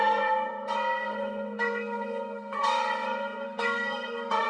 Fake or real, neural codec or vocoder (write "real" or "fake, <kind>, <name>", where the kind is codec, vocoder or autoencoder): fake, codec, SNAC